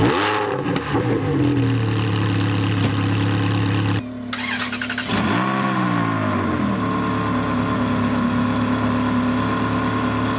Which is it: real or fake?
real